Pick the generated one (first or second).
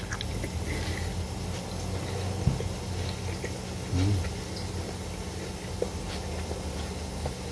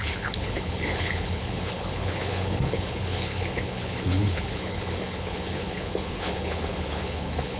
second